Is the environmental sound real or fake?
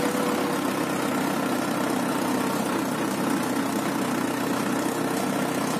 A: real